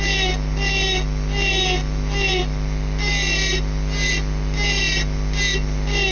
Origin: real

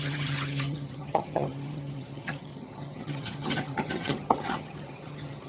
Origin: fake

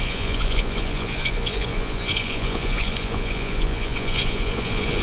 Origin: fake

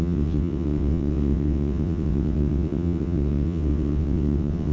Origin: fake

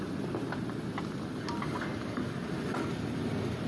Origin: real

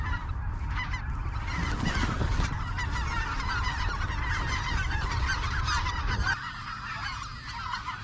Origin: real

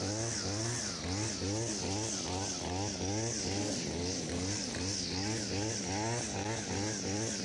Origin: real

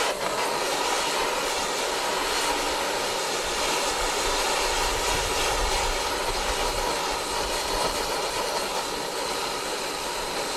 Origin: real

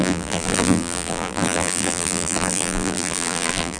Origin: fake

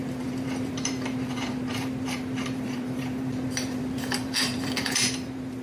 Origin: fake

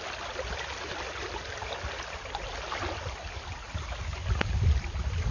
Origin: real